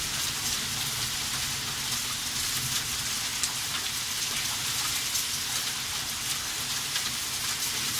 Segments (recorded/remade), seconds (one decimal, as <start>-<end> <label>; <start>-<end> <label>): 0.0-8.0 recorded